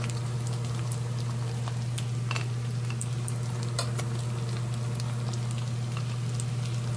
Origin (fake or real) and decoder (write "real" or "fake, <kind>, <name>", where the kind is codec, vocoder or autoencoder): real